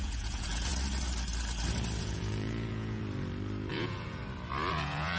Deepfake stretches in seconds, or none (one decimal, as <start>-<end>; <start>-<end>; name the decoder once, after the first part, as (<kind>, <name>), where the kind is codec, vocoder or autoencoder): 0.0-0.7 (vocoder, Vocos); 2.0-3.0; 3.7-4.2; 4.7-5.2